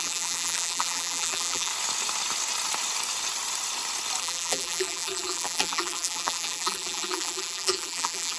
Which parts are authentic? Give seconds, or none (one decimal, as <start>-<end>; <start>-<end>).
1.7-4.2